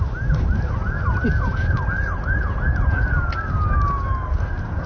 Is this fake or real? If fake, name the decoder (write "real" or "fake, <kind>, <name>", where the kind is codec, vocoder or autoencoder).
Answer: real